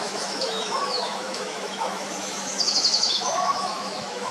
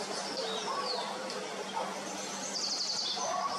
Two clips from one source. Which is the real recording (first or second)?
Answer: second